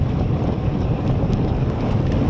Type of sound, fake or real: real